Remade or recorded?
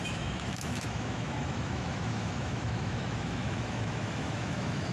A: remade